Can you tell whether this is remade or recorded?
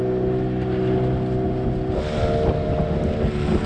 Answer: recorded